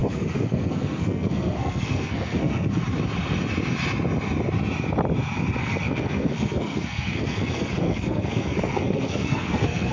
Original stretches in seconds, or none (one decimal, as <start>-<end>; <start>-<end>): 2.8-5.6